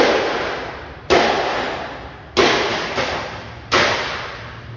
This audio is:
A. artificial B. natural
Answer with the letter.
B